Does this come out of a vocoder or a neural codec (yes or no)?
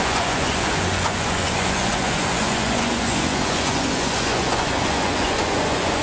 yes